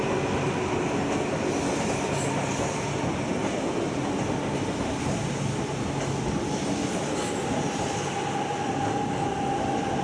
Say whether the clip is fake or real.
real